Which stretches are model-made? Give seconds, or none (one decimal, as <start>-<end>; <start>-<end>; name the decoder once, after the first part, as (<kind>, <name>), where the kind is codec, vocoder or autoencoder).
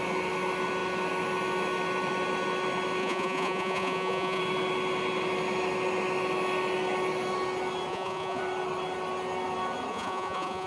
3.0-4.4 (vocoder, Vocos); 7.9-8.4; 9.9-10.7